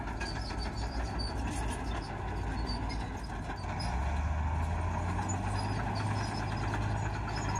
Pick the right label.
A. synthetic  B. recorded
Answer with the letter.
B